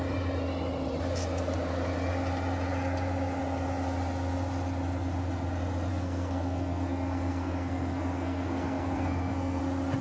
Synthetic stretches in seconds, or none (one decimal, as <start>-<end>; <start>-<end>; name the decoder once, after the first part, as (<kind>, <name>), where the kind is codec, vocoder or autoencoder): 5.9-9.6 (codec, SNAC)